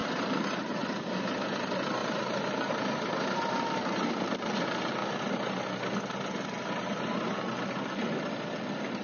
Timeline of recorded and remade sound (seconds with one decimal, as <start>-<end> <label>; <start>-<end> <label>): 0.0-0.6 remade; 0.6-2.0 recorded; 2.0-3.4 remade; 3.4-9.0 recorded